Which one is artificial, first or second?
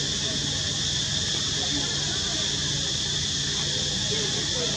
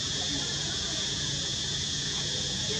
second